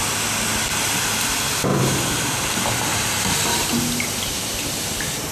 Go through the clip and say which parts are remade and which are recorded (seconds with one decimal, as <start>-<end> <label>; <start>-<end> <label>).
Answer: 0.0-1.7 recorded; 1.7-2.5 remade; 2.5-2.9 recorded; 2.9-5.3 remade